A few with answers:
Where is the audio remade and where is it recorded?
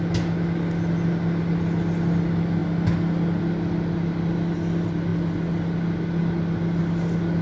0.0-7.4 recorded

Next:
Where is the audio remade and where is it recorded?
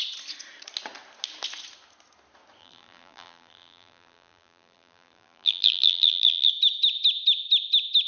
0.0-2.6 recorded; 2.6-6.5 remade; 6.5-8.1 recorded